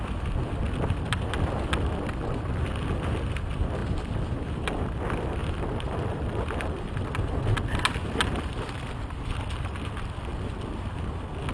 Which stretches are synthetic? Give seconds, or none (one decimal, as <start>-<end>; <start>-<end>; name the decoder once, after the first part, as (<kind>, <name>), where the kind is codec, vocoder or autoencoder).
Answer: 3.8-4.9 (vocoder, BigVGAN v2); 5.4-6.9